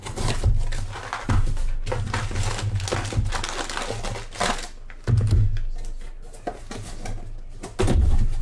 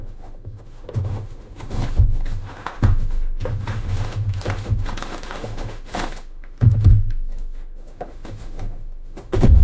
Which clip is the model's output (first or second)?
second